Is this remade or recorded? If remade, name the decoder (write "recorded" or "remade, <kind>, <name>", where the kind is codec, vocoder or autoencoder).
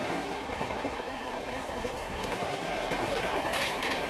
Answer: remade, codec, SNAC